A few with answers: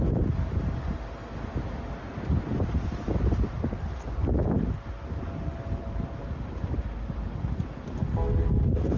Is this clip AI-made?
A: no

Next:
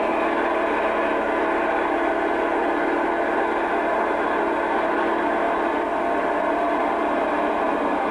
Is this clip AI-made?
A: no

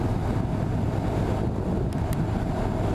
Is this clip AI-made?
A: no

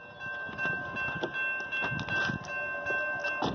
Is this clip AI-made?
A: no